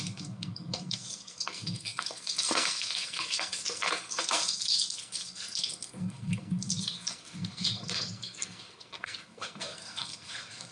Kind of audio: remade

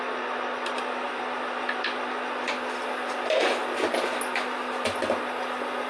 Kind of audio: recorded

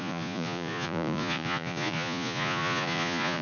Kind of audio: remade